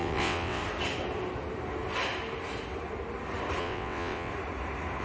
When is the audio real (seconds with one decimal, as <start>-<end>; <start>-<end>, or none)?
0.6-3.6; 4.3-5.0